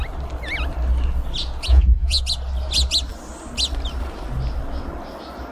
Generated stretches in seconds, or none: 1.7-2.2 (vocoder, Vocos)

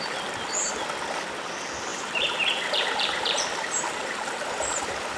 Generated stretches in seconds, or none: 1.9-5.2 (vocoder, BigVGAN v2)